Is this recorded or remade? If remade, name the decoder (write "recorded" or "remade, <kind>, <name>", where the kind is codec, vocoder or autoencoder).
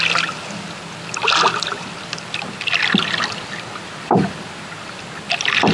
recorded